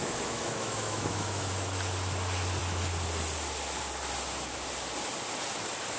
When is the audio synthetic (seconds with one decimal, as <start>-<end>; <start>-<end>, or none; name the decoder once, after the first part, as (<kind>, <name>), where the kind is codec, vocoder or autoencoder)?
0.0-1.5 (autoencoder, DAC-VAE)